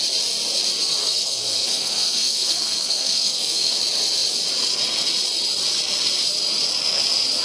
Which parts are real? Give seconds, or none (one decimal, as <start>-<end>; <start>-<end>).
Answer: 0.0-1.0; 3.8-7.4